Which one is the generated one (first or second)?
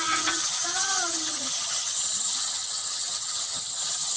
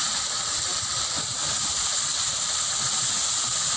first